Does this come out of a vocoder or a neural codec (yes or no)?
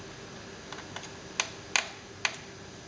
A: no